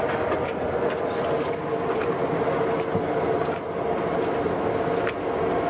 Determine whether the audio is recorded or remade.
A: recorded